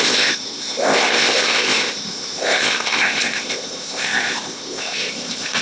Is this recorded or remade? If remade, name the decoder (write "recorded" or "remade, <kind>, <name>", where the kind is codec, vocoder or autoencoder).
remade, codec, ZipCodec